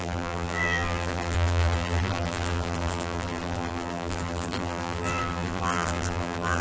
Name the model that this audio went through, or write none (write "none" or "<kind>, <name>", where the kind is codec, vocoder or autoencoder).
vocoder, BigVGAN v2